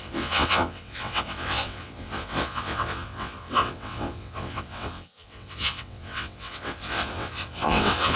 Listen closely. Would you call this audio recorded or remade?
remade